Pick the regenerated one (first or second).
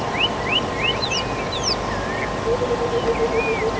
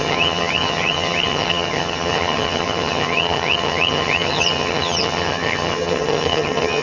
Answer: second